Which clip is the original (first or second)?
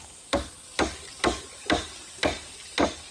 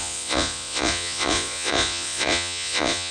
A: first